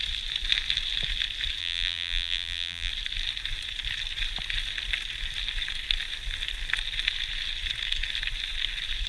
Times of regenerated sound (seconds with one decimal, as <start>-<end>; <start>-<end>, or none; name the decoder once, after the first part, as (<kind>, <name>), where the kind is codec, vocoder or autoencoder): 1.6-2.9 (vocoder, BigVGAN v2)